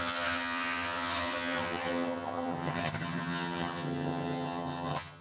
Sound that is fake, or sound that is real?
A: fake